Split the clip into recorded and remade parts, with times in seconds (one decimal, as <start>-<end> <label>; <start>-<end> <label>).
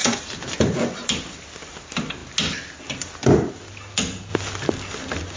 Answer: 0.0-5.4 recorded